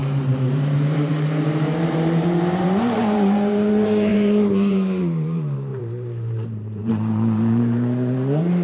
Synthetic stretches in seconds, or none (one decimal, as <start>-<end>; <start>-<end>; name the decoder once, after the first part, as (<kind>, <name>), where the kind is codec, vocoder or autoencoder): 0.0-8.6 (vocoder, BigVGAN v2)